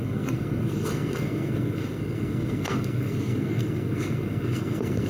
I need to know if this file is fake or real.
fake